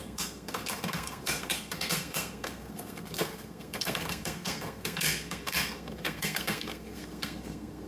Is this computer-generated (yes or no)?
yes